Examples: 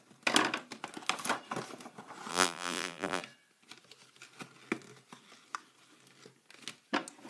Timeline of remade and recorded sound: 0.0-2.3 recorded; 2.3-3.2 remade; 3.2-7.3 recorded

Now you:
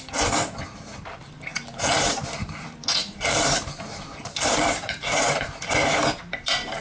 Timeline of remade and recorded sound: 0.0-1.5 recorded; 1.5-5.6 remade; 5.6-6.8 recorded

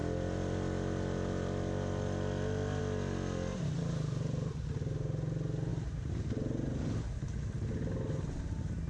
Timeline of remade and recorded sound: 0.0-3.5 recorded; 3.5-4.6 remade; 4.6-5.7 recorded; 5.7-6.8 remade; 6.8-8.9 recorded

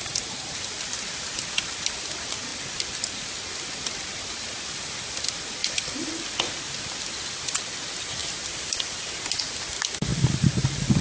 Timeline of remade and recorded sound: 0.0-5.6 recorded; 5.6-6.1 remade; 6.1-8.2 recorded; 8.2-8.9 remade; 8.9-10.1 recorded; 10.1-11.0 remade

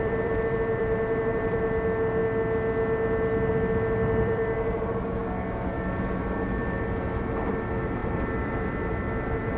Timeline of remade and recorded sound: 0.0-2.2 remade; 2.2-3.5 recorded; 3.5-5.2 remade; 5.2-7.5 recorded; 7.5-9.6 remade

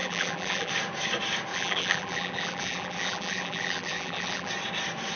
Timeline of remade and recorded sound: 0.0-0.7 remade; 0.7-1.5 recorded; 1.5-4.5 remade; 4.5-5.2 recorded

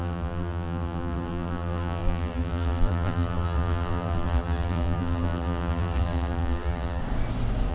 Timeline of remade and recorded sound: 0.0-7.0 remade; 7.0-7.7 recorded